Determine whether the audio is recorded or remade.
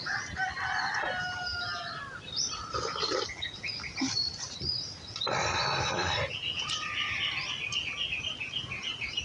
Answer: recorded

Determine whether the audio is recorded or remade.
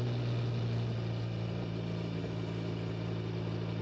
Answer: recorded